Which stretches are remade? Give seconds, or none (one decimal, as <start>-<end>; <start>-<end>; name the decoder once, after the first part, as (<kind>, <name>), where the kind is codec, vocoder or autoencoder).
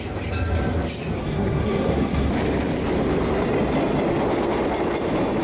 1.2-2.3 (codec, SNAC)